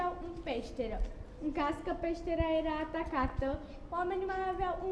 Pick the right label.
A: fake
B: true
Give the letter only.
B